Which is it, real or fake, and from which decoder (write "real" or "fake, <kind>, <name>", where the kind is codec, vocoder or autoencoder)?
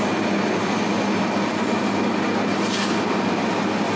real